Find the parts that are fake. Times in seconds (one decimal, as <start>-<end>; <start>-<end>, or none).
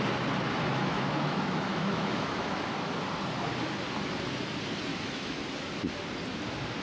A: 0.7-2.9; 4.9-5.4